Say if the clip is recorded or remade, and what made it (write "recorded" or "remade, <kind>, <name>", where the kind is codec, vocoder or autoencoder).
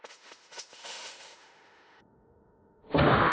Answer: remade, autoencoder, DAC-VAE